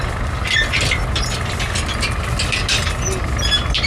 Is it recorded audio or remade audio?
recorded